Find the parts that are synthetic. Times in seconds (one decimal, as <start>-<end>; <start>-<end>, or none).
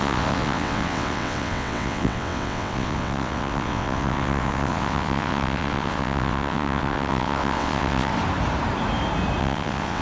0.0-8.1; 9.4-10.0